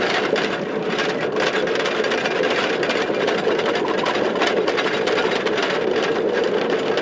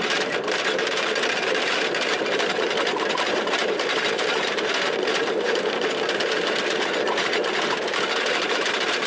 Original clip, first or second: first